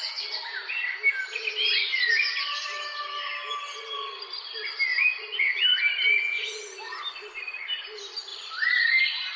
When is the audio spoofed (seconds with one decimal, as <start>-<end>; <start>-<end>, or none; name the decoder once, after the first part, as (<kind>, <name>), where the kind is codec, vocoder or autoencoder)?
4.9-6.2 (vocoder, BigVGAN v2); 8.3-9.0